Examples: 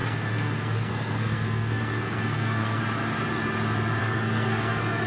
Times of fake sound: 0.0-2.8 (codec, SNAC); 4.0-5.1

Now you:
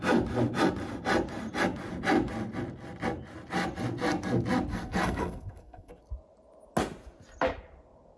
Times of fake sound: 4.7-5.9 (codec, SNAC)

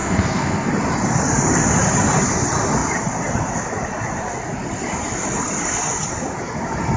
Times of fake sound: 0.0-0.7 (codec, SNAC)